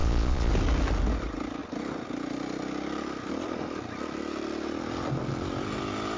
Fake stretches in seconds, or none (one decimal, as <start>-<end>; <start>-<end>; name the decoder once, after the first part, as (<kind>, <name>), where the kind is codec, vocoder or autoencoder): 0.0-0.5 (vocoder, Vocos)